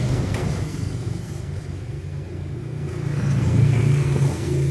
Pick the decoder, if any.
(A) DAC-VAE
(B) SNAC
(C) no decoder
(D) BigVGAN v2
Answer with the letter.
B